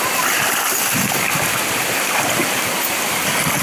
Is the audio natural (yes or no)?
yes